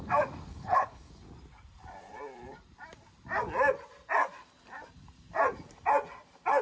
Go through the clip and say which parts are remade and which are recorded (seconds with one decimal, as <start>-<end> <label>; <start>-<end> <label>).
0.0-0.5 recorded; 0.5-1.1 remade; 1.1-6.6 recorded